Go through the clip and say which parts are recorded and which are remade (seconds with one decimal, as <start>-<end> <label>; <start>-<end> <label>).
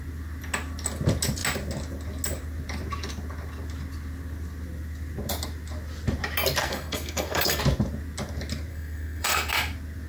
0.0-6.6 recorded; 6.6-7.6 remade; 7.6-8.7 recorded; 8.7-9.5 remade; 9.5-10.1 recorded